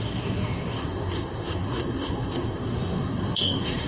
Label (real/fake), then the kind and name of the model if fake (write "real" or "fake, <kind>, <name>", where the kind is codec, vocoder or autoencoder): fake, codec, SNAC